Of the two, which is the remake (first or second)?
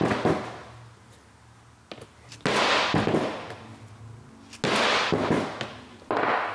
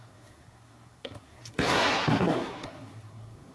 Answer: second